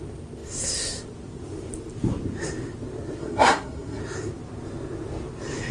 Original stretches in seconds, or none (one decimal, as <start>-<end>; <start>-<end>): 0.0-3.2; 4.0-5.7